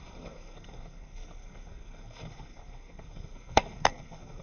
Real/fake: fake